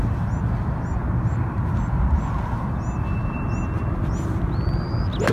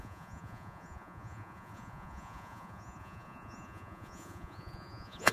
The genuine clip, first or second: first